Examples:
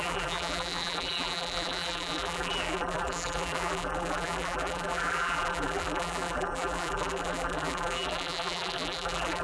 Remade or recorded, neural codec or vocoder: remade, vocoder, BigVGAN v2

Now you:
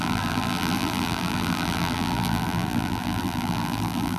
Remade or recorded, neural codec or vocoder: remade, vocoder, BigVGAN v2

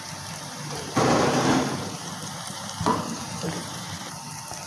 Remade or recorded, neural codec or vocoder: remade, vocoder, BigVGAN v2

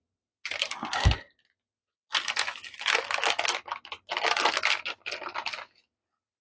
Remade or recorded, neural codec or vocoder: recorded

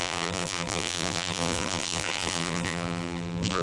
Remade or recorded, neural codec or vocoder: remade, vocoder, BigVGAN v2